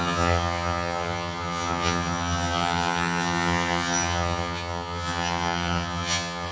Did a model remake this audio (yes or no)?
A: yes